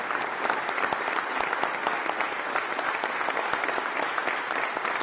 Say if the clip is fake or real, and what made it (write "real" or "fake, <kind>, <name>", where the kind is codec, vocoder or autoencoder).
fake, vocoder, BigVGAN v2